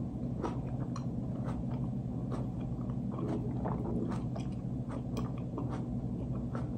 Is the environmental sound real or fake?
real